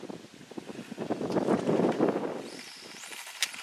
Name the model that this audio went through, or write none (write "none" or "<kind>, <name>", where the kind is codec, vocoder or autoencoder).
none